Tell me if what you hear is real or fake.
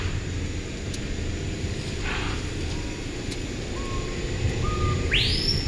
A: real